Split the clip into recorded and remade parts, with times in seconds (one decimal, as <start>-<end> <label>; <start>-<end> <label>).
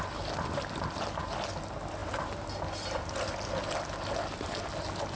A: 0.0-5.2 recorded